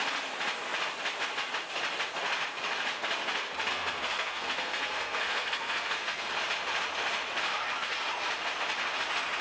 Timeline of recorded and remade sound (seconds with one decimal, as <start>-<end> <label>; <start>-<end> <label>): 0.0-3.7 recorded; 3.7-6.3 remade; 6.3-9.4 recorded